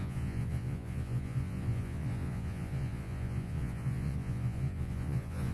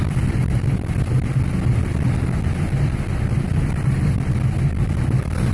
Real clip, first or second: second